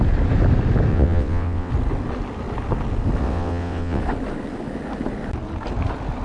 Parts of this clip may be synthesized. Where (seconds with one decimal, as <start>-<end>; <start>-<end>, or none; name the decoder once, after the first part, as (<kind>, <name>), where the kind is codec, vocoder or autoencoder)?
0.9-1.7 (vocoder, WaveNeXt); 3.2-4.0

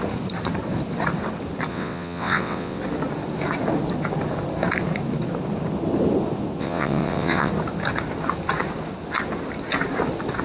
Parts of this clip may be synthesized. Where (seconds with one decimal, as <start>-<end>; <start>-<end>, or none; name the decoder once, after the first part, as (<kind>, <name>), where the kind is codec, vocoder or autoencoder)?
1.7-2.8 (vocoder, WaveNeXt); 6.6-7.5

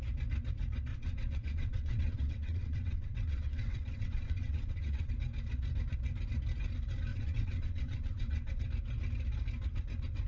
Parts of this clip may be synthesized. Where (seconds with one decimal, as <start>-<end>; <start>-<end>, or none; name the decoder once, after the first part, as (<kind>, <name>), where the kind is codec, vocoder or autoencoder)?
0.9-5.1 (vocoder, WaveNeXt); 7.1-8.6